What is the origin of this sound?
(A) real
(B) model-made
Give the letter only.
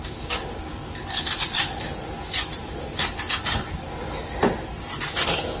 A